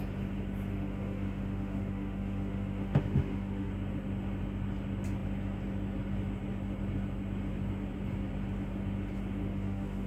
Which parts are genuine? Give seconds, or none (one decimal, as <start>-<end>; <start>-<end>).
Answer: 0.0-0.7; 3.7-9.4